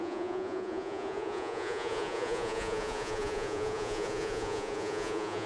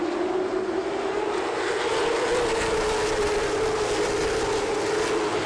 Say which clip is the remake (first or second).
first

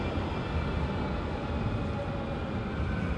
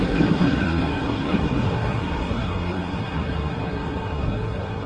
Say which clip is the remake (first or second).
second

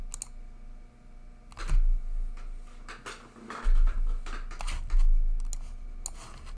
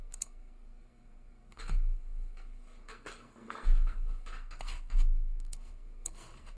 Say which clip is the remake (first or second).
second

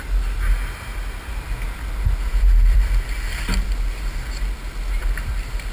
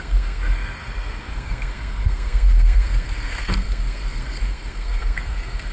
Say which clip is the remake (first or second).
second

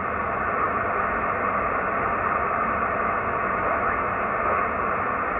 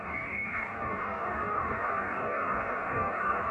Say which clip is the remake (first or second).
second